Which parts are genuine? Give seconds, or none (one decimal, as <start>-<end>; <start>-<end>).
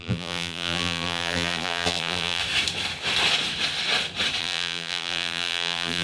2.4-4.4